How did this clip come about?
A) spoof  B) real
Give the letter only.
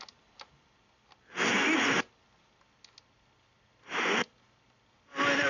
B